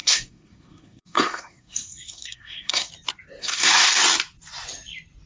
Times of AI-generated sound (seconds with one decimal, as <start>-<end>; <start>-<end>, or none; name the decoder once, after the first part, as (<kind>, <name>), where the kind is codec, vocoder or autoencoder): 0.0-2.9 (codec, SNAC); 3.4-3.9